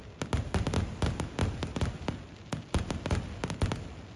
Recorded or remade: recorded